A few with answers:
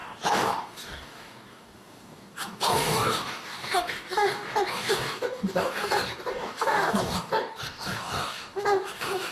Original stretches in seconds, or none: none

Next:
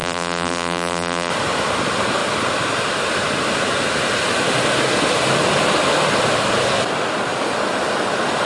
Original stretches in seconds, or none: 1.3-8.5